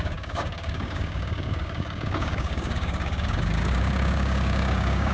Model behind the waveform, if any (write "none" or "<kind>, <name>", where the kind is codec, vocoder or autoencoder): codec, DAC